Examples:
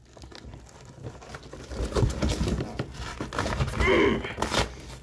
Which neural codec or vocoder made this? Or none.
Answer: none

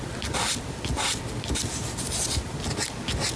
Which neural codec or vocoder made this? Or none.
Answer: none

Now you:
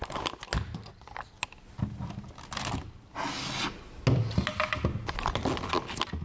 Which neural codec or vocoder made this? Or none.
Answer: none